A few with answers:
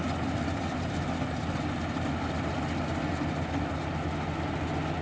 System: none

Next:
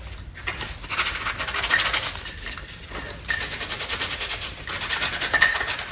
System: none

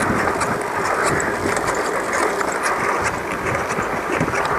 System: none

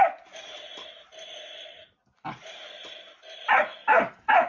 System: none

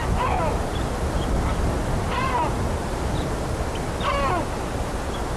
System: none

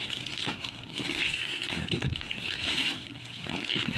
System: codec, SNAC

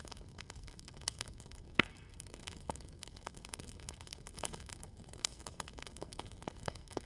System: codec, SNAC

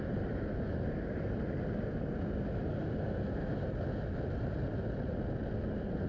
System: none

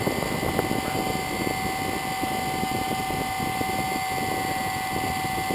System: none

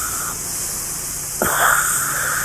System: none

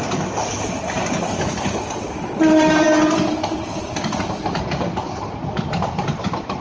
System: none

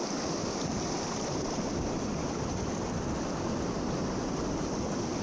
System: none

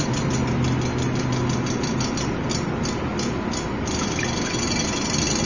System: none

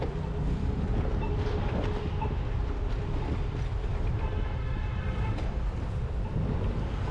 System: vocoder, BigVGAN v2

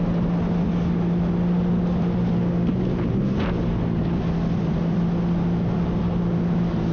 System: none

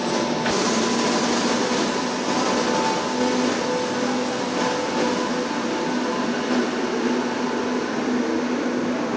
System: none